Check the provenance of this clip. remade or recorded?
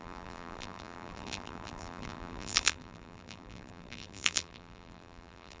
remade